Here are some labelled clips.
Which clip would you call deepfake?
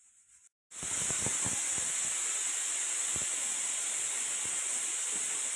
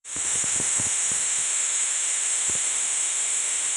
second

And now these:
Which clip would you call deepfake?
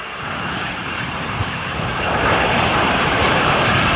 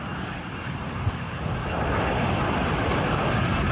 first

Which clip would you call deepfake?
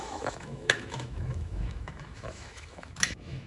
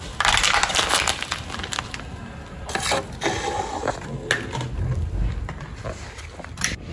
first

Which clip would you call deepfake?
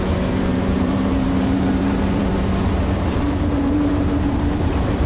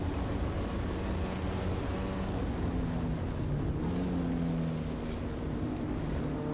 first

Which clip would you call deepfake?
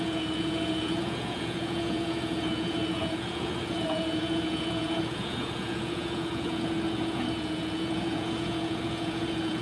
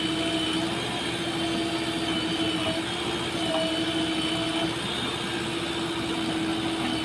first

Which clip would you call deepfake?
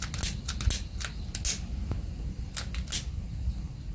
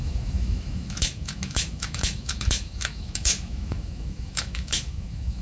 second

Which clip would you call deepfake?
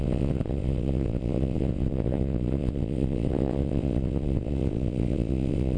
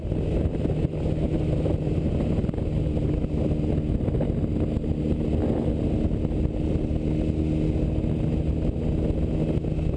first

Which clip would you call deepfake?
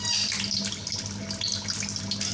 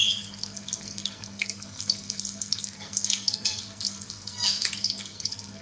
second